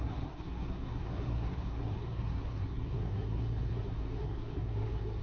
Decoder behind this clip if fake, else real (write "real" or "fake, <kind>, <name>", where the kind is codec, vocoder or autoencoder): fake, codec, SNAC